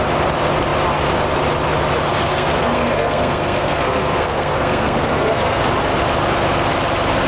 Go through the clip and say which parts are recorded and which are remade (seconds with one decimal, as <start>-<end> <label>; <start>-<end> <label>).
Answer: 0.0-2.1 recorded; 2.1-5.6 remade; 5.6-7.3 recorded

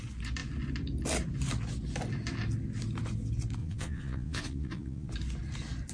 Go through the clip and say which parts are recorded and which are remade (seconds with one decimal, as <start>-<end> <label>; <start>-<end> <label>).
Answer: 0.0-3.6 recorded; 3.6-5.1 remade; 5.1-5.9 recorded

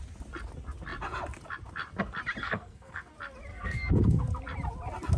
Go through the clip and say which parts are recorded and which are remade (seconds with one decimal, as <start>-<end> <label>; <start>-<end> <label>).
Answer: 0.0-2.4 recorded; 2.4-3.1 remade; 3.1-3.5 recorded; 3.5-4.2 remade; 4.2-5.2 recorded

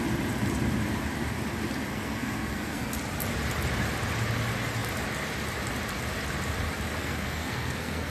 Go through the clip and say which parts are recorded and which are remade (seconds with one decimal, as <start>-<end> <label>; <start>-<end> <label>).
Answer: 0.0-1.9 recorded; 1.9-2.9 remade; 2.9-7.0 recorded; 7.0-8.1 remade

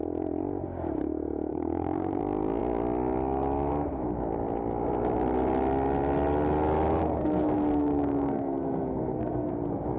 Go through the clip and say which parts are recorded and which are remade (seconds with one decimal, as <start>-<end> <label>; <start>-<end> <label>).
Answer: 0.0-1.5 recorded; 1.5-2.2 remade; 2.2-7.0 recorded; 7.0-9.5 remade; 9.5-10.0 recorded

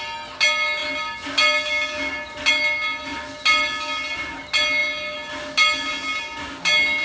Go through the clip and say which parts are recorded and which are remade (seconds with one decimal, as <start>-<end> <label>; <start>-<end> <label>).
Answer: 0.0-7.0 recorded